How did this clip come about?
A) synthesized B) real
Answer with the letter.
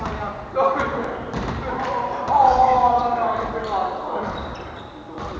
B